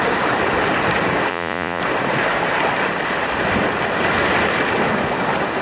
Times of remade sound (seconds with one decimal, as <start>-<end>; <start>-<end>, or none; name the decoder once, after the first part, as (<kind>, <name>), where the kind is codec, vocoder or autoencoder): 1.3-1.8 (vocoder, Vocos)